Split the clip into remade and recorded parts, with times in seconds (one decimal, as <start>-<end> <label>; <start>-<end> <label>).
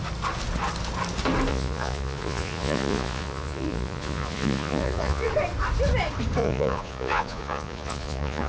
0.0-1.5 recorded; 1.5-5.3 remade; 5.3-6.4 recorded; 6.4-8.5 remade